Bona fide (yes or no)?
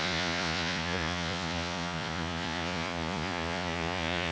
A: no